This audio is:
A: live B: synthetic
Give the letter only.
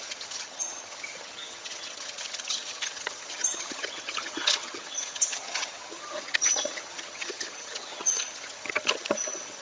B